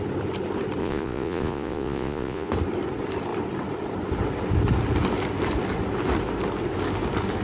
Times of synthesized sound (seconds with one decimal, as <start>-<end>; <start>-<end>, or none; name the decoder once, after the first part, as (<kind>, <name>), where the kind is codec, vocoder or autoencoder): 0.8-2.5 (vocoder, Vocos)